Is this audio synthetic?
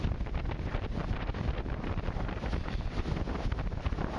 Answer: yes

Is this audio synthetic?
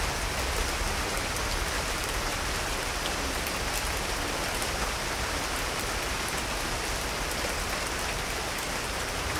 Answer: no